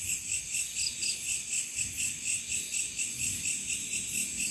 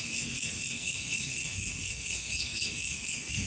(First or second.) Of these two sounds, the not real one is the second